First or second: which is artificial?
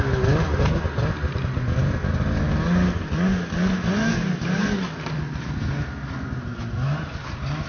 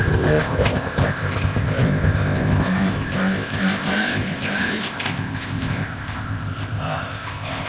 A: second